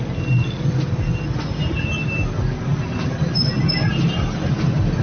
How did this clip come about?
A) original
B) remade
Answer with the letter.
A